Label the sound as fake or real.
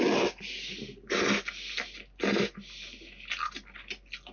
real